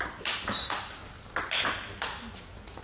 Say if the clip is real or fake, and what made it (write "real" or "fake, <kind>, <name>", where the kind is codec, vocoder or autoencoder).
real